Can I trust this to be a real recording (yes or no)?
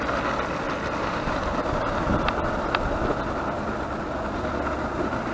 yes